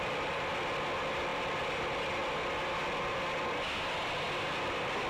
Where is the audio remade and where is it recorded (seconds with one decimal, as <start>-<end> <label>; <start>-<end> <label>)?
0.0-1.3 recorded; 1.3-1.8 remade; 1.8-5.1 recorded